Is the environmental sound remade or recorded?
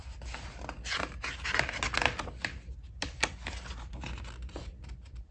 recorded